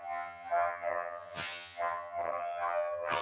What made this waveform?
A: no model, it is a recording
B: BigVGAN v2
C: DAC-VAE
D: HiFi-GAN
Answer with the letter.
D